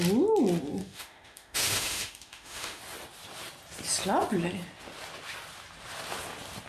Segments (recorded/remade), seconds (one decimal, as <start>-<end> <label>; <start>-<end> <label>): 0.0-0.8 recorded; 0.8-2.8 remade; 2.8-6.7 recorded